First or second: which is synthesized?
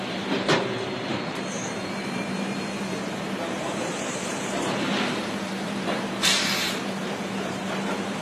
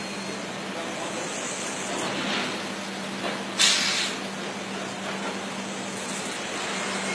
first